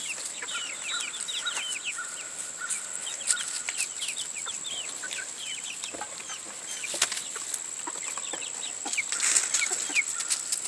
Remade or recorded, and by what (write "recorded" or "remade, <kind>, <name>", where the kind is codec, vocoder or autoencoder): recorded